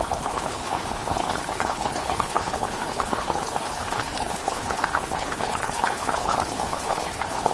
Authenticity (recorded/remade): remade